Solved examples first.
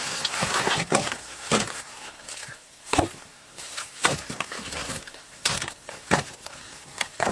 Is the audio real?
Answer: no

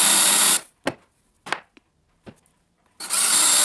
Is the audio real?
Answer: yes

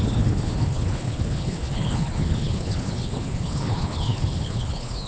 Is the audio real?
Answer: no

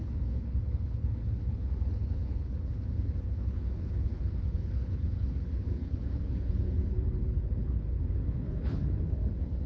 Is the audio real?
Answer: no